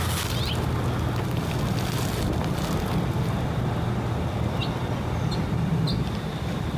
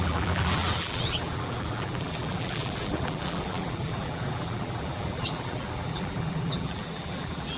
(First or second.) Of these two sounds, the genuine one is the first